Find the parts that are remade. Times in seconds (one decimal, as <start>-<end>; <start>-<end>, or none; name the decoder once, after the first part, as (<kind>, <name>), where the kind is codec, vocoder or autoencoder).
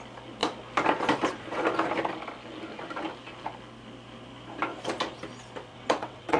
5.7-6.4 (vocoder, WaveNeXt)